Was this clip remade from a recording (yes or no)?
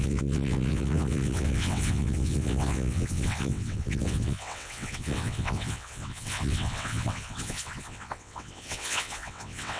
yes